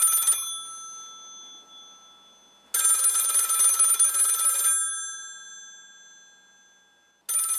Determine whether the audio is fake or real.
real